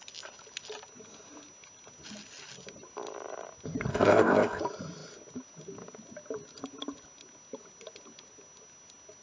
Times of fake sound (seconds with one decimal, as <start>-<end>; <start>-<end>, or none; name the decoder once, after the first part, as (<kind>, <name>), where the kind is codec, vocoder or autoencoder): 3.9-4.6 (codec, ZipCodec)